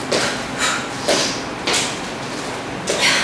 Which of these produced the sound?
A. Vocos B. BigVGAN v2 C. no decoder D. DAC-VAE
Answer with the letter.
C